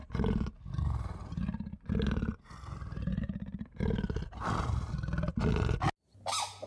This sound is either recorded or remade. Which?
recorded